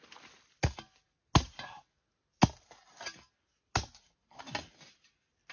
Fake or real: real